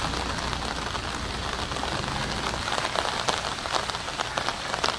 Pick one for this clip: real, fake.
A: real